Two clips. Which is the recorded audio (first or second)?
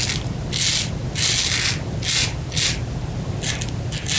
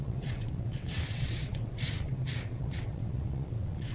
first